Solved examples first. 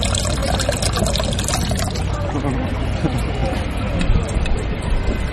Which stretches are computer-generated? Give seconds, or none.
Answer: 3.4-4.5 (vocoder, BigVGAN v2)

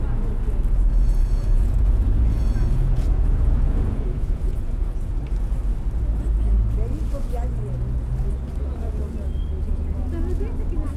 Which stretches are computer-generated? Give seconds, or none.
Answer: 0.9-5.1 (vocoder, Vocos)

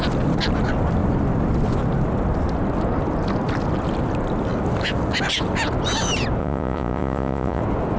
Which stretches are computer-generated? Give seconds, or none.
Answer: 6.4-7.6 (vocoder, Vocos)

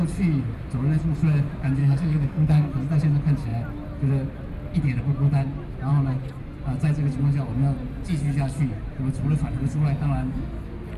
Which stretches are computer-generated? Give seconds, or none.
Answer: 1.8-2.7 (codec, SNAC)

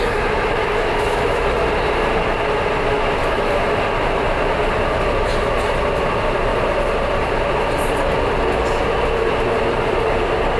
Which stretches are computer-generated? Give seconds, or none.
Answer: 0.6-1.5 (autoencoder, DAC-VAE); 3.2-3.8